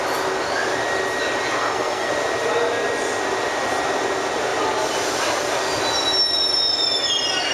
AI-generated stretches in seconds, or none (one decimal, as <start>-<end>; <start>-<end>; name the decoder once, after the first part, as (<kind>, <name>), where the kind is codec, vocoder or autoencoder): 1.6-2.1 (codec, SNAC)